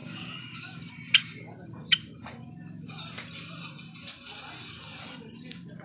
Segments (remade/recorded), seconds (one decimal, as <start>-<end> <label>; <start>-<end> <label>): 0.0-0.9 remade; 0.9-5.8 recorded